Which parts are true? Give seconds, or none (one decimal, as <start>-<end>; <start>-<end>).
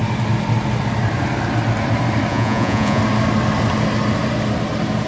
0.0-2.3; 3.0-5.1